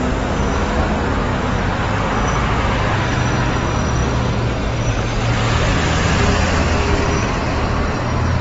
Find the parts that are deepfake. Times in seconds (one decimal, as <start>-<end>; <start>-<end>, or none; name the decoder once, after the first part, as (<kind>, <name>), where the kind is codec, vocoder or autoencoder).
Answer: none